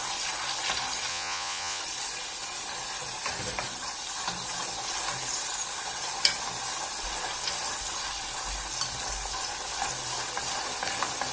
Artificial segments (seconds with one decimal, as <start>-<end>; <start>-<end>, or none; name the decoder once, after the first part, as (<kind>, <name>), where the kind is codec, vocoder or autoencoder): 1.1-1.8 (vocoder, Vocos)